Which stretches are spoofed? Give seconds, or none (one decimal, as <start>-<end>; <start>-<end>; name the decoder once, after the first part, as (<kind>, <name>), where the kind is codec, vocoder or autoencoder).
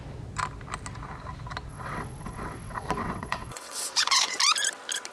1.7-4.4 (vocoder, WaveNeXt)